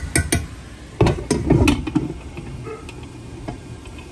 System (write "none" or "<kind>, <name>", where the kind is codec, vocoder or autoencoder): none